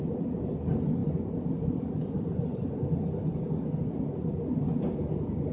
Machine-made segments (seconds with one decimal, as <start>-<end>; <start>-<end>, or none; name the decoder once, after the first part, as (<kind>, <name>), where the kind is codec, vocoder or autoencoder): none